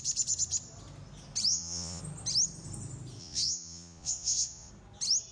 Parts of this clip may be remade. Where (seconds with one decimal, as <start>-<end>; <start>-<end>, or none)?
1.5-2.0; 3.2-4.7